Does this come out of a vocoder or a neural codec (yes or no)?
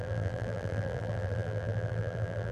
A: yes